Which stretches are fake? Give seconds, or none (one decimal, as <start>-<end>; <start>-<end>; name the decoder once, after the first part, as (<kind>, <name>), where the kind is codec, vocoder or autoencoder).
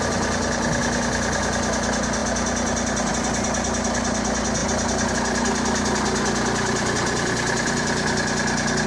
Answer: none